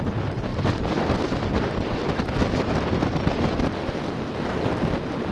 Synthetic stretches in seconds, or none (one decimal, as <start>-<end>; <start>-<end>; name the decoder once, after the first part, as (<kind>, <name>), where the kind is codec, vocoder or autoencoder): none